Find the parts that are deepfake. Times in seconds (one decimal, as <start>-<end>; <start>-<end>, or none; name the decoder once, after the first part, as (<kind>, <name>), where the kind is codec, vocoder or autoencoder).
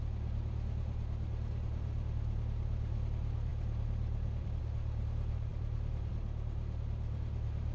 3.5-4.6 (vocoder, BigVGAN v2); 5.5-6.1